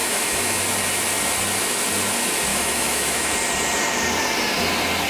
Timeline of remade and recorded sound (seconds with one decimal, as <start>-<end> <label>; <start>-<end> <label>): 0.0-0.6 remade; 0.6-2.5 recorded; 2.5-3.3 remade; 3.3-5.1 recorded